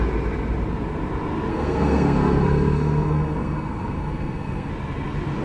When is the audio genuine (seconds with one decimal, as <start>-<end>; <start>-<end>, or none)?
0.0-1.5; 4.7-5.4